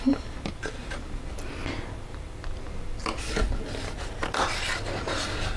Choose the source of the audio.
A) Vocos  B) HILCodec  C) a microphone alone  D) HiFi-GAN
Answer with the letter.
C